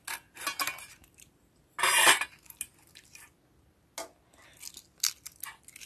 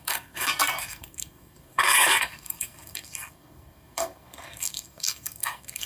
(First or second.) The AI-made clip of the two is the second